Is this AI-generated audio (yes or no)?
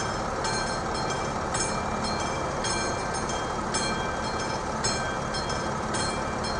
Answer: no